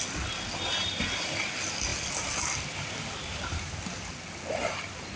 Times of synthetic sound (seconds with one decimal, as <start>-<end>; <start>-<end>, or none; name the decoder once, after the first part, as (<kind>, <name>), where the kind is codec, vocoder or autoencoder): none